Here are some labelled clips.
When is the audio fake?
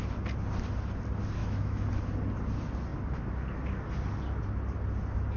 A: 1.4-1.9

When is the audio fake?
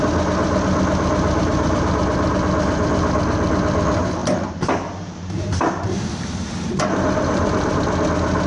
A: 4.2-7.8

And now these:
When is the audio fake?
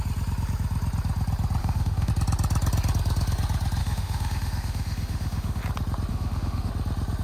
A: 1.6-2.1; 3.8-5.6; 6.1-6.7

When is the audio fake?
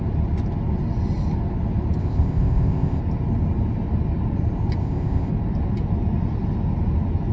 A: 2.0-3.0; 4.8-5.3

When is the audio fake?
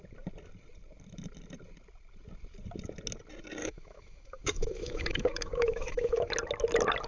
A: 3.6-6.3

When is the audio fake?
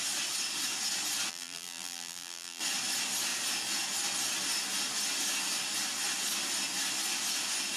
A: 1.3-2.6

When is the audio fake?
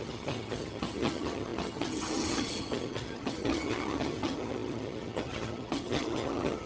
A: 0.0-6.7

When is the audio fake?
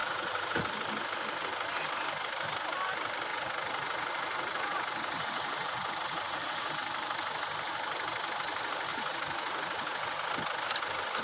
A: 0.0-0.6; 3.3-6.7; 8.9-10.3